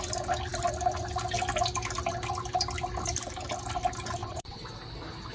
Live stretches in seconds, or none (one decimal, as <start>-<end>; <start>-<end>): 0.0-4.2; 4.7-5.3